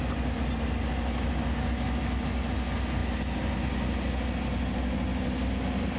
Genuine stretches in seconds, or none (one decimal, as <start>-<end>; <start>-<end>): 0.0-6.0